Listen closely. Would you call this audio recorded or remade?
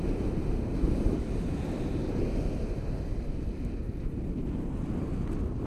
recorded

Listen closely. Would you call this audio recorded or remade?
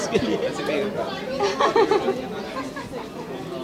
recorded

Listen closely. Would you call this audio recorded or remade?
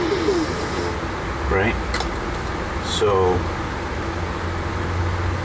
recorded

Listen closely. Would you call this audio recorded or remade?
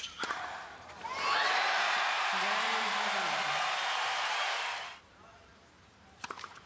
remade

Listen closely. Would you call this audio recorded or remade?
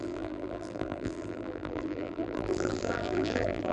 remade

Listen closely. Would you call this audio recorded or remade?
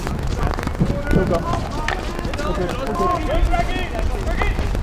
recorded